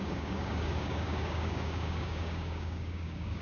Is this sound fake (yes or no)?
yes